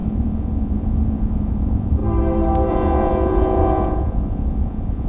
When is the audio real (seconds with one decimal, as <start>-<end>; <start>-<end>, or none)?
2.0-2.7